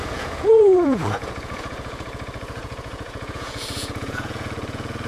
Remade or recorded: remade